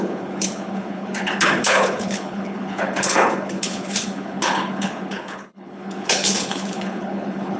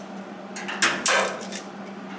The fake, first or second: first